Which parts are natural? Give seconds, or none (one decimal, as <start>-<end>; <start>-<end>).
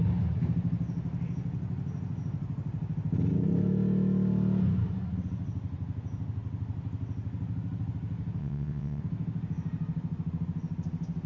0.0-8.4; 9.0-11.3